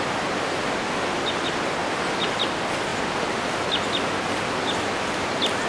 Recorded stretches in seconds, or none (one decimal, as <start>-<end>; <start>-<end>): 0.0-5.7